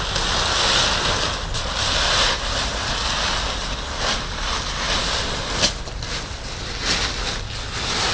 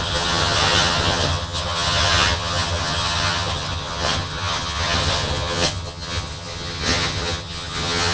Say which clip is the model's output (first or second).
second